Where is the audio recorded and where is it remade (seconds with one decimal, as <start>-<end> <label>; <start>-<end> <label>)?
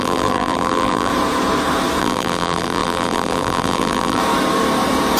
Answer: 0.0-1.1 remade; 1.1-2.0 recorded; 2.0-4.2 remade; 4.2-5.2 recorded